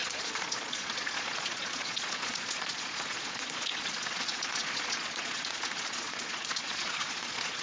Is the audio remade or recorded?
remade